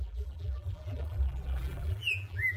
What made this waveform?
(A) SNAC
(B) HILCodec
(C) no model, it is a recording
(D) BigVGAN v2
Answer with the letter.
D